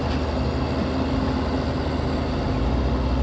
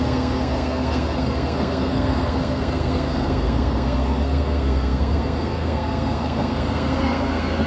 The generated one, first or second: second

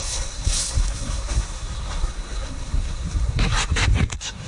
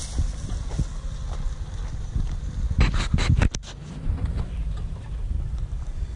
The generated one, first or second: first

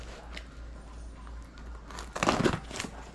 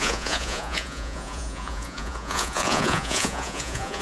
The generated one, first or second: second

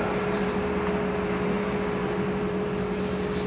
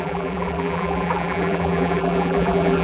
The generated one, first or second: second